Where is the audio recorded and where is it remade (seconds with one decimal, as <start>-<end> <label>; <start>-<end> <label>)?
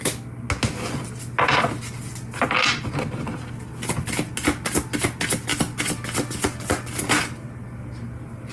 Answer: 0.0-8.5 recorded